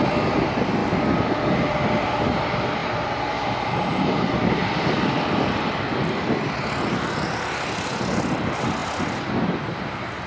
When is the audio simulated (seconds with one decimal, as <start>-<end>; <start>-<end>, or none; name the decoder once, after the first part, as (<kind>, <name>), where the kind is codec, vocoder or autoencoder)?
none